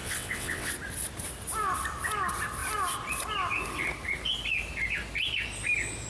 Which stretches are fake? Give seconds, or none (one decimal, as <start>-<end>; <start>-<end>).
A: 0.0-0.7